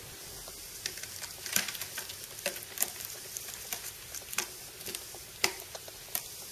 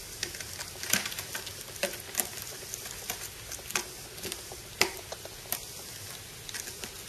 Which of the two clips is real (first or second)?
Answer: second